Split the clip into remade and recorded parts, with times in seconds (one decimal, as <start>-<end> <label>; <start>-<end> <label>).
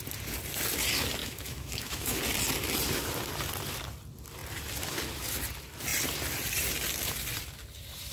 0.0-1.2 recorded; 1.2-2.2 remade; 2.2-8.1 recorded